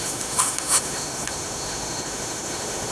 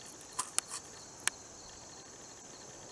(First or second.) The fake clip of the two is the first